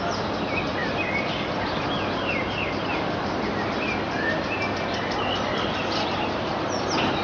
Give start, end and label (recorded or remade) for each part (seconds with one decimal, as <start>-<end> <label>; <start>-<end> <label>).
0.0-7.2 recorded